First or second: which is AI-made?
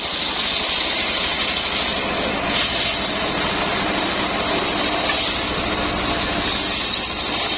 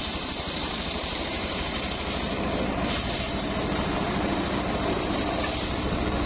second